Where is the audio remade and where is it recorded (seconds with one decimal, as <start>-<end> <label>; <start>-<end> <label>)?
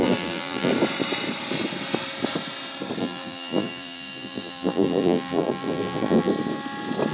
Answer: 0.0-0.7 remade; 0.7-3.0 recorded; 3.0-6.3 remade; 6.3-7.1 recorded